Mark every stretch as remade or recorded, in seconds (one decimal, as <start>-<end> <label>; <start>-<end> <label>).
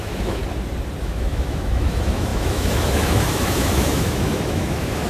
0.0-0.4 remade; 0.4-1.0 recorded; 1.0-5.1 remade